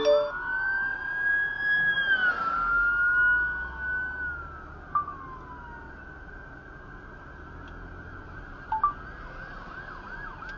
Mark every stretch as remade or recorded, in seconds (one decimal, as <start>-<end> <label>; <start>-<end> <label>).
0.0-10.6 recorded